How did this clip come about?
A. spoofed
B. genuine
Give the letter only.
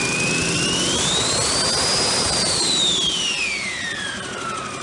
B